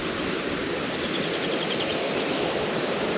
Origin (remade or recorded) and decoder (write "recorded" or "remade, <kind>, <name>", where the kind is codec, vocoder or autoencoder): recorded